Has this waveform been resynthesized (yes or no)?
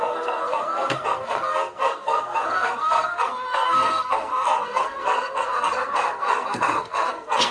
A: yes